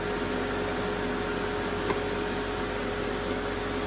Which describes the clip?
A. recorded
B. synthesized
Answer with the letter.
A